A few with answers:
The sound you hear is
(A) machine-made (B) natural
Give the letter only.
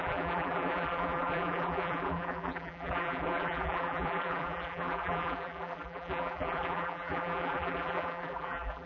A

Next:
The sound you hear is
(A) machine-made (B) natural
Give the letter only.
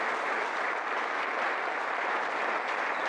B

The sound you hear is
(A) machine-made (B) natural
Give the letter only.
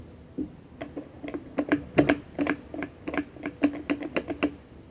B